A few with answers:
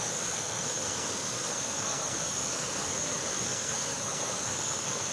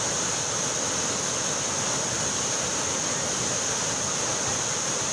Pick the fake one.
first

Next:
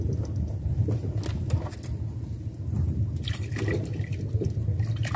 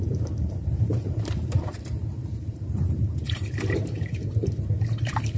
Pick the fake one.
second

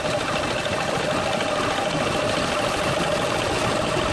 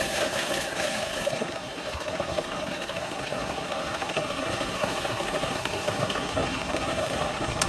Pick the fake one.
second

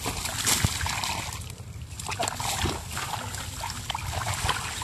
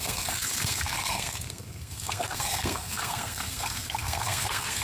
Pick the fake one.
second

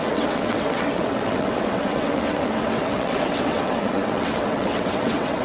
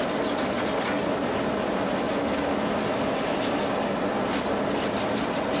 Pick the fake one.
first